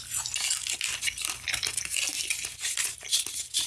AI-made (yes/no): no